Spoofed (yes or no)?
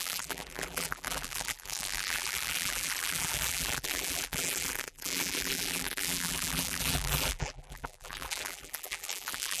yes